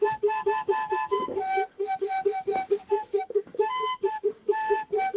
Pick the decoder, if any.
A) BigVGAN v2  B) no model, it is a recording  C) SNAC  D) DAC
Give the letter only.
D